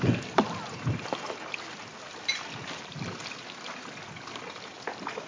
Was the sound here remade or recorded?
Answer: recorded